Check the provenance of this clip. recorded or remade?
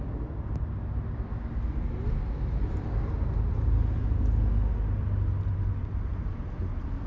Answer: recorded